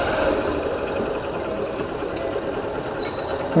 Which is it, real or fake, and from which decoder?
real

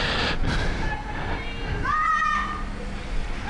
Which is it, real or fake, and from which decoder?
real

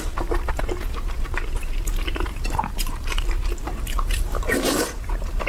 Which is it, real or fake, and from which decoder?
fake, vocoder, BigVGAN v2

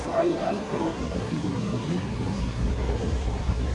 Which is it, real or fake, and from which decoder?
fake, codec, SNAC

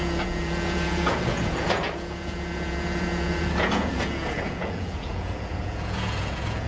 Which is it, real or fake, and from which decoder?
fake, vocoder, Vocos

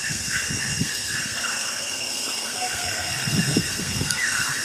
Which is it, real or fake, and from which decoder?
fake, codec, SNAC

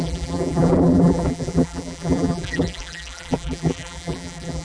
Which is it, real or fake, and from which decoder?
fake, vocoder, BigVGAN v2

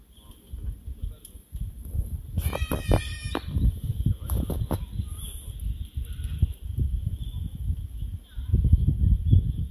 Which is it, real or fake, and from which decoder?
real